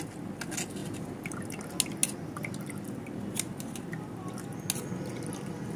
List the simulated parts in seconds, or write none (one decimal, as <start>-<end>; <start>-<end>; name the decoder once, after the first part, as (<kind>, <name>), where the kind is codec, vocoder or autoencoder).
0.8-1.4 (vocoder, BigVGAN v2)